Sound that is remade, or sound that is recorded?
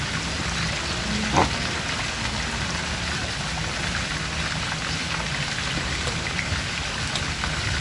recorded